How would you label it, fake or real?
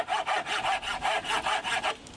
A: real